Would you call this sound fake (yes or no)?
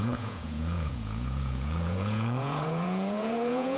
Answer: yes